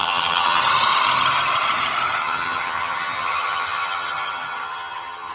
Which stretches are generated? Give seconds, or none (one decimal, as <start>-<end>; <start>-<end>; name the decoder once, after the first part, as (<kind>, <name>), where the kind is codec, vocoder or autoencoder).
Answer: 0.0-0.6 (vocoder, HiFi-GAN); 2.2-5.3